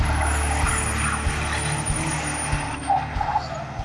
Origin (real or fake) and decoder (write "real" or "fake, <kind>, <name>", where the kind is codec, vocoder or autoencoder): real